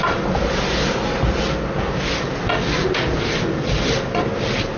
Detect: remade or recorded recorded